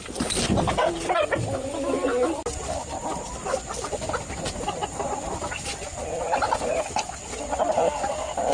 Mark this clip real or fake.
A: real